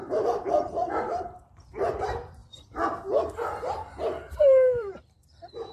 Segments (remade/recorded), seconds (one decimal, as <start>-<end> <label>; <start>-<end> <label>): 0.0-2.4 remade; 2.4-4.3 recorded; 4.3-5.7 remade